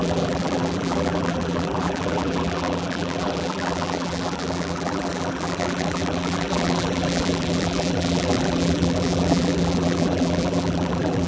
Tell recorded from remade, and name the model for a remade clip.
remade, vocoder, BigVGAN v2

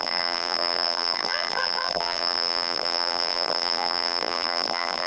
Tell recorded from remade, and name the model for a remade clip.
remade, vocoder, BigVGAN v2